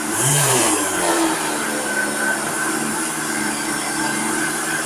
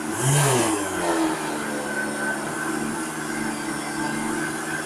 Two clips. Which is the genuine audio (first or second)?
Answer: second